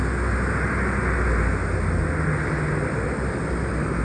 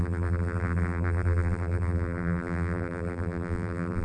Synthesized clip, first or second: second